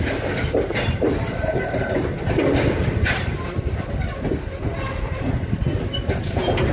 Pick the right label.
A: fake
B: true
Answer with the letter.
B